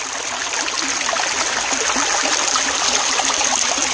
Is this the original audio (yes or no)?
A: yes